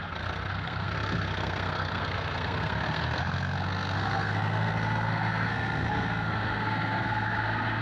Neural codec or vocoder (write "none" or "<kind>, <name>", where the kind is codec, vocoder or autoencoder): codec, SNAC